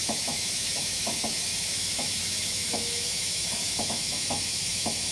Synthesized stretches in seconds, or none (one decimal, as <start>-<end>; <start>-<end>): 0.0-5.1